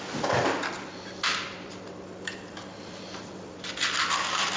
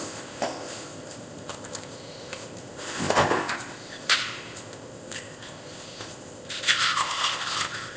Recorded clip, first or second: first